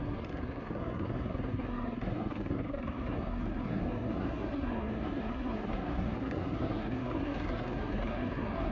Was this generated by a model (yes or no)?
yes